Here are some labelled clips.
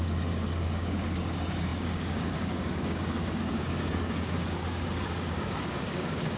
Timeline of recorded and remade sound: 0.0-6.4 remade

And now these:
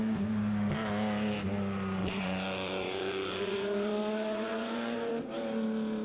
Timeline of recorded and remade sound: 0.0-2.0 recorded; 2.0-5.1 remade; 5.1-6.0 recorded

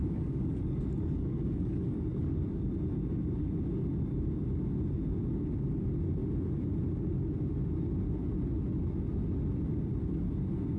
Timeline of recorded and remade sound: 0.0-2.6 remade; 2.6-10.8 recorded